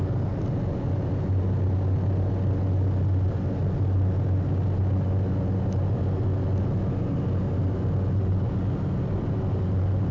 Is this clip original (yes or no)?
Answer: yes